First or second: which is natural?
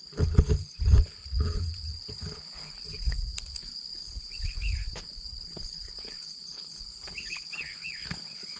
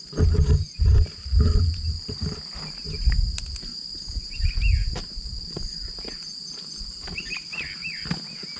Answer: second